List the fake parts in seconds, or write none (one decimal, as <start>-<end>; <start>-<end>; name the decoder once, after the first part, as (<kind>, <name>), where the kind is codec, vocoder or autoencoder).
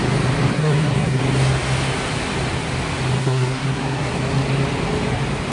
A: 0.5-1.2 (codec, SNAC); 3.2-4.1